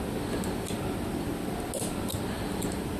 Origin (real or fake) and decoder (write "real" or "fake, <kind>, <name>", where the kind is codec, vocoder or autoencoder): real